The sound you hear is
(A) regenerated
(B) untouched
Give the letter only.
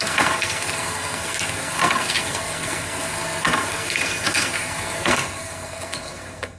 A